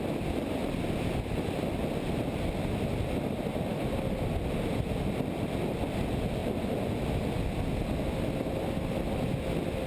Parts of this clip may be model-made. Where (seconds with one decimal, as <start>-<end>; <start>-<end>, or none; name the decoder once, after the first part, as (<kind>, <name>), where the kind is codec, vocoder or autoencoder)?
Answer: 0.6-1.9 (vocoder, BigVGAN v2); 6.4-7.4